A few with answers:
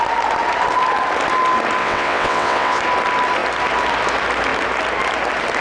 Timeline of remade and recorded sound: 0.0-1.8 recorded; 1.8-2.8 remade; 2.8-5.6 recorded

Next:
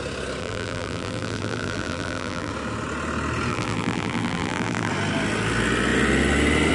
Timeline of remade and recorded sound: 0.0-0.4 recorded; 0.4-2.5 remade; 2.5-3.5 recorded; 3.5-4.9 remade; 4.9-6.7 recorded

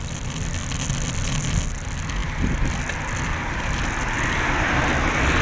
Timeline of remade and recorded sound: 0.0-5.4 recorded

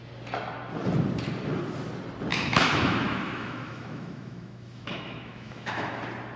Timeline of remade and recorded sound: 0.0-2.3 recorded; 2.3-6.0 remade; 6.0-6.4 recorded

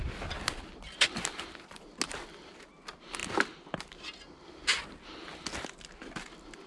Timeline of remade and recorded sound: 0.0-6.7 recorded

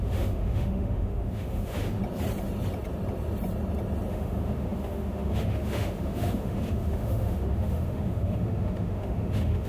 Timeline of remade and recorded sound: 0.0-2.0 remade; 2.0-4.1 recorded; 4.1-9.7 remade

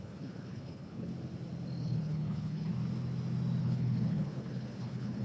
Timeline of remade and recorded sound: 0.0-1.1 remade; 1.1-1.8 recorded; 1.8-2.7 remade; 2.7-3.6 recorded; 3.6-5.2 remade